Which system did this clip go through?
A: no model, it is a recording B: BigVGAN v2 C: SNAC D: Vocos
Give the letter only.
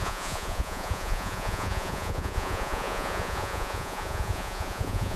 D